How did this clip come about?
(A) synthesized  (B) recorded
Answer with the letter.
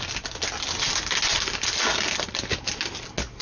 B